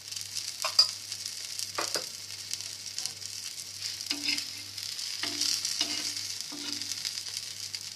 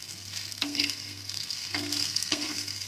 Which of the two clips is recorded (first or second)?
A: first